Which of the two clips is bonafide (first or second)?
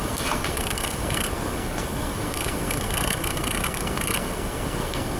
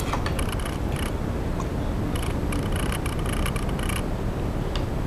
second